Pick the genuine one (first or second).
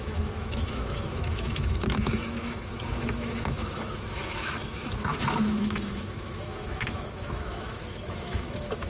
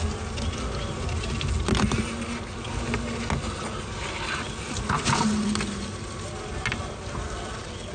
second